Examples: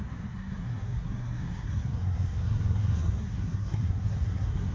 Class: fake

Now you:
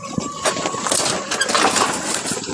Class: real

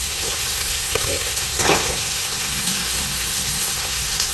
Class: fake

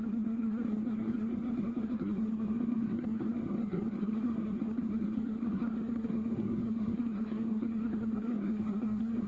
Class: fake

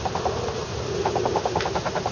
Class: real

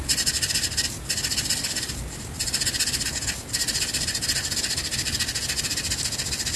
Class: real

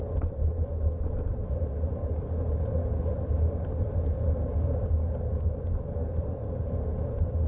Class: real